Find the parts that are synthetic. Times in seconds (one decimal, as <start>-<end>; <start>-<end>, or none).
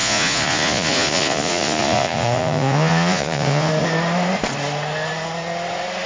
0.0-3.7